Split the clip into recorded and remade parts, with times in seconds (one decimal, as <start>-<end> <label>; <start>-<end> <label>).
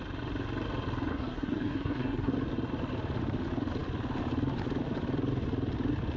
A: 0.0-1.1 recorded; 1.1-2.3 remade; 2.3-6.2 recorded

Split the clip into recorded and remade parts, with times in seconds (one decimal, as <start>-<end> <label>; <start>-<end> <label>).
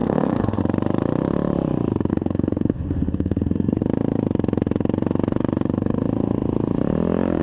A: 0.0-0.6 remade; 0.6-2.1 recorded; 2.1-3.8 remade; 3.8-7.4 recorded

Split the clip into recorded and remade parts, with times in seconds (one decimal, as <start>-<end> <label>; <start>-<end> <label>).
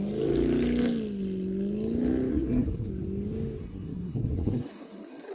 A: 0.0-2.3 recorded; 2.3-2.9 remade; 2.9-3.6 recorded; 3.6-5.3 remade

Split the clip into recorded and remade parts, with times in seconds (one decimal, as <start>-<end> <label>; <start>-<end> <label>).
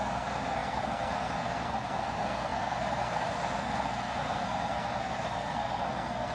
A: 0.0-6.3 remade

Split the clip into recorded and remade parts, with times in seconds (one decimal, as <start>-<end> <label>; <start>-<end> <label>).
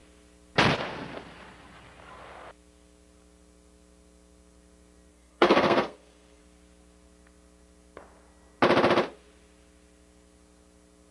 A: 0.0-5.1 recorded; 5.1-6.4 remade; 6.4-11.1 recorded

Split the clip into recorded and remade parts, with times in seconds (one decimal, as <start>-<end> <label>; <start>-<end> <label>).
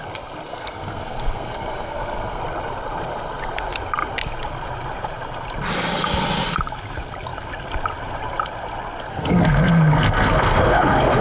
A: 0.0-0.5 recorded; 0.5-2.4 remade; 2.4-9.1 recorded; 9.1-11.2 remade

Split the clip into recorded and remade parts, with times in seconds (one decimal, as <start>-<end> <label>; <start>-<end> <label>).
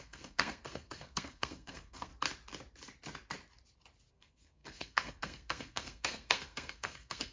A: 0.0-2.1 remade; 2.1-4.1 recorded; 4.1-7.3 remade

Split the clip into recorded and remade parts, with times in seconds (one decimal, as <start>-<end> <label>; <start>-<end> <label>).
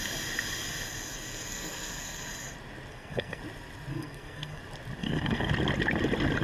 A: 0.0-1.1 recorded; 1.1-2.3 remade; 2.3-2.9 recorded; 2.9-3.4 remade; 3.4-3.9 recorded; 3.9-4.6 remade; 4.6-5.0 recorded; 5.0-5.5 remade; 5.5-6.4 recorded